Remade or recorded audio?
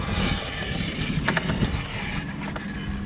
recorded